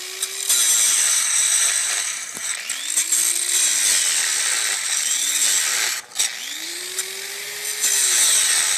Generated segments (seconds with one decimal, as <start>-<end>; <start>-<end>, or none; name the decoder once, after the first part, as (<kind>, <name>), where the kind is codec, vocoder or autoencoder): none